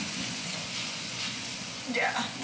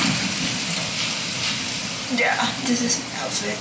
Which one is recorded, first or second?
second